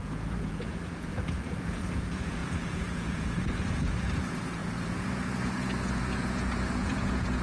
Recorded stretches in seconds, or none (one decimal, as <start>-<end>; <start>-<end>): none